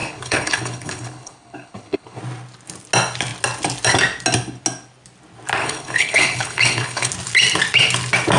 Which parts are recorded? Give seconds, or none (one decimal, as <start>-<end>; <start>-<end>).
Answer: 2.2-5.6; 7.1-8.4